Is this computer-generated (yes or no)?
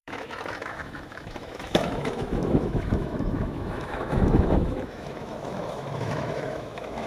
yes